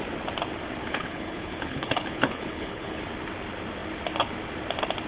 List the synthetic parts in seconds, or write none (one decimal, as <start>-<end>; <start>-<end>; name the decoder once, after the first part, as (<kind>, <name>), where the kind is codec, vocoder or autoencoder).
0.8-3.0 (codec, HILCodec)